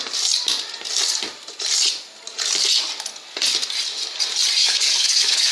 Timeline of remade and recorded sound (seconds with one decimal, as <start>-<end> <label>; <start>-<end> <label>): 0.0-4.6 recorded; 4.6-5.5 remade